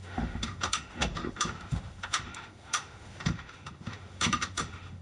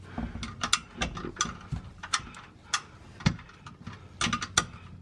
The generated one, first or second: first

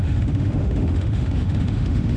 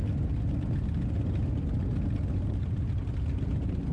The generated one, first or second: first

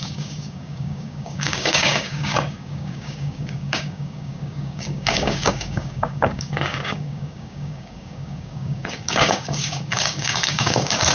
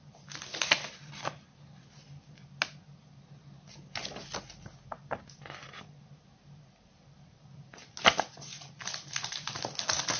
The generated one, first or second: first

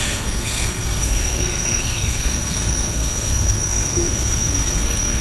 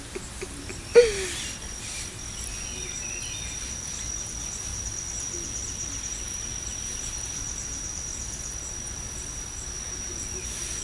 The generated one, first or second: first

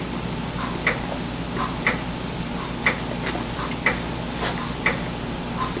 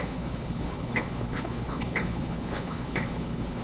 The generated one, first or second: second